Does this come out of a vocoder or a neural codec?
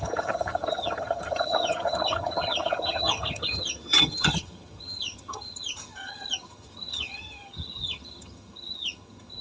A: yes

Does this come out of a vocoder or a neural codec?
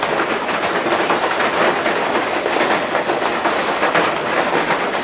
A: no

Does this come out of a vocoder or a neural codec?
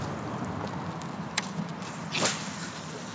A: no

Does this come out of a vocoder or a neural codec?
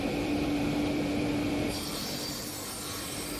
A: yes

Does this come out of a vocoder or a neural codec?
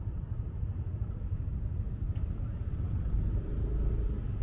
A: no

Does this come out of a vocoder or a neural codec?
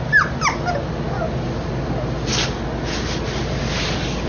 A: no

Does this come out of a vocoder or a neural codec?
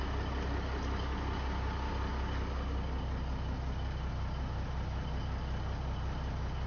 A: no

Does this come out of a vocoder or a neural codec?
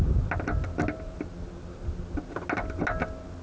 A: no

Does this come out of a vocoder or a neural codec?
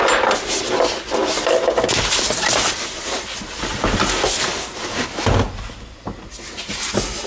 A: no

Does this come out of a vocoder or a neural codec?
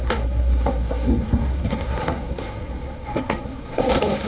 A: yes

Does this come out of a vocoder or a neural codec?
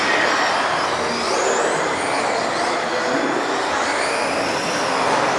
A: no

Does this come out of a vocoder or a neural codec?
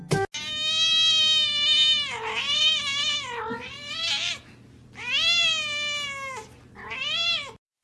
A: no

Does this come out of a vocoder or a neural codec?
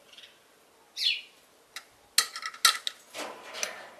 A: no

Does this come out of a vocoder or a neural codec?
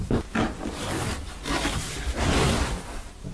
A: no